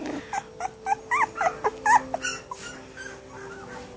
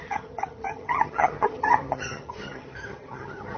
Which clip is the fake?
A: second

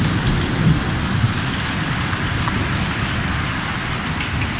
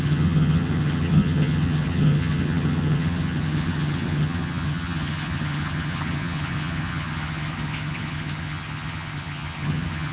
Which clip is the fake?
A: second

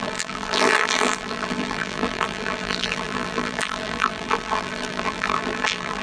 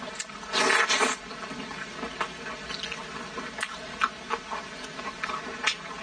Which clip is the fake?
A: first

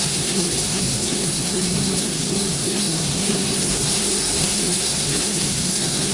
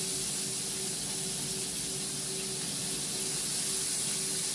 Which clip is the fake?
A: first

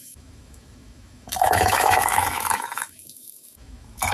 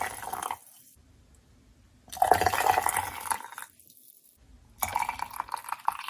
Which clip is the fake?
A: first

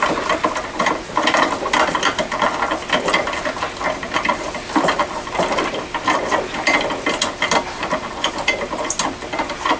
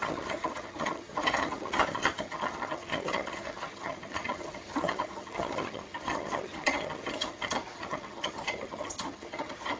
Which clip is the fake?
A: second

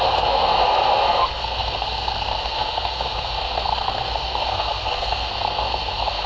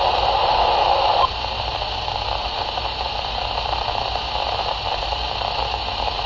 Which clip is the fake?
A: first